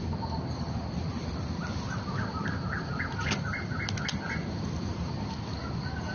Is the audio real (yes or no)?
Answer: yes